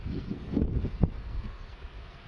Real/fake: fake